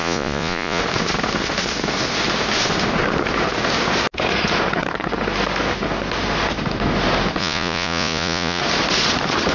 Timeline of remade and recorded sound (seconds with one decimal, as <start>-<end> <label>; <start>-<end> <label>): 0.0-0.8 remade; 0.8-7.4 recorded; 7.4-8.6 remade; 8.6-9.5 recorded